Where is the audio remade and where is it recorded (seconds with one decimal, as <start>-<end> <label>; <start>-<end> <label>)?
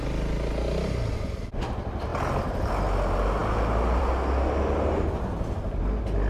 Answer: 0.0-2.1 recorded; 2.1-2.7 remade; 2.7-6.3 recorded